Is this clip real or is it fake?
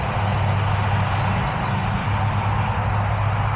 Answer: real